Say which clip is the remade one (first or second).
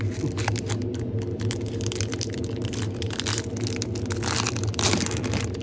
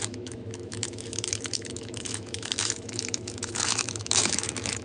second